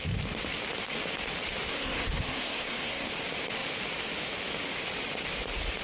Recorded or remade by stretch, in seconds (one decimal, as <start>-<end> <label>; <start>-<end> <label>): 0.0-1.7 recorded; 1.7-3.1 remade; 3.1-5.8 recorded